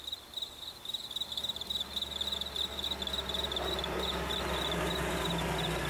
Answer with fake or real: real